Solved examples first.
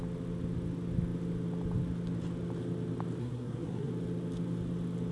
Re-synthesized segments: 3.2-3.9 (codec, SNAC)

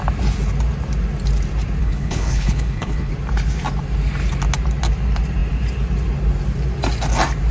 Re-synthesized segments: 1.8-3.1 (codec, HILCodec)

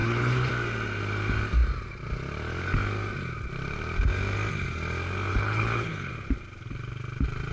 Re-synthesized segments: 0.0-0.5 (codec, HILCodec); 5.3-6.1